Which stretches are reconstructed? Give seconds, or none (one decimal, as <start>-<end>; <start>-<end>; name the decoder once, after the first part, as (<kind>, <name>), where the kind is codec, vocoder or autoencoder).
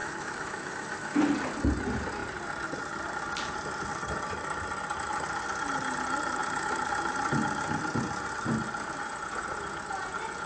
0.0-1.2 (autoencoder, DAC-VAE)